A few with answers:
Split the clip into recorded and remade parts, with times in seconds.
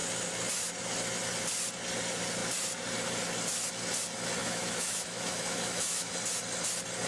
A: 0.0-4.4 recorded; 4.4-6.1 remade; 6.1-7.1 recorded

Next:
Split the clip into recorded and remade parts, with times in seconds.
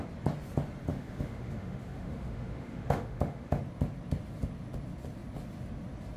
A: 0.0-0.9 recorded; 0.9-3.6 remade; 3.6-6.2 recorded